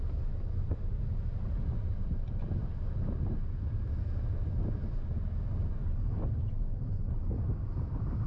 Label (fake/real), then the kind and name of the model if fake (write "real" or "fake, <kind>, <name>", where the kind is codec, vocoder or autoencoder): real